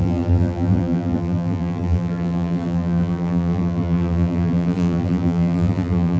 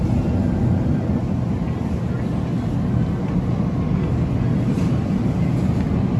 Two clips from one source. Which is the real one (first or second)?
second